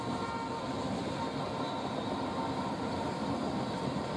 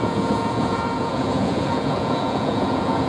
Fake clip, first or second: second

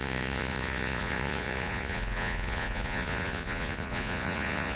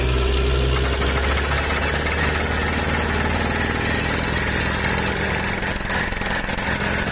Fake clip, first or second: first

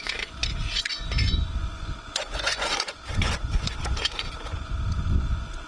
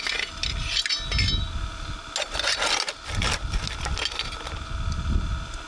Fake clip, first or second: first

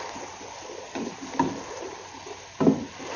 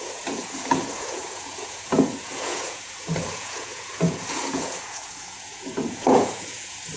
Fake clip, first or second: second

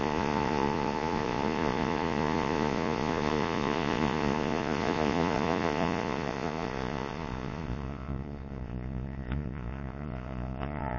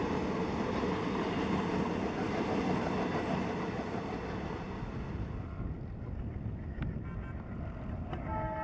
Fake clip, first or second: first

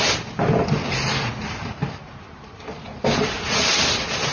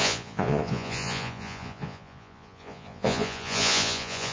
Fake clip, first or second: second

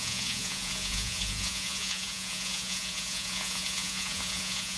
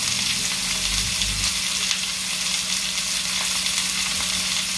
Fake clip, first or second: first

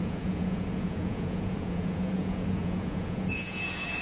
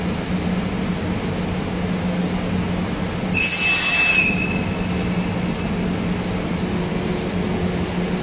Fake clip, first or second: first